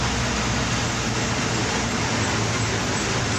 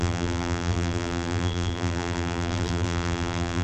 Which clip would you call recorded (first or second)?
first